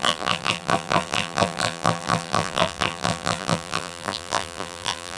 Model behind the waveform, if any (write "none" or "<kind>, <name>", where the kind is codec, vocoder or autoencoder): vocoder, BigVGAN v2